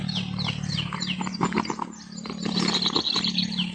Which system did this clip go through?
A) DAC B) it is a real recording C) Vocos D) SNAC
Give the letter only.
B